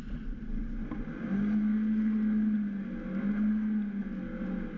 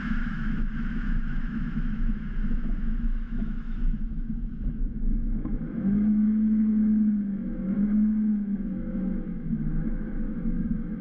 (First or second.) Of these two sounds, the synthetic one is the second